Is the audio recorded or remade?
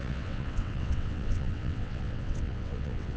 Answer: remade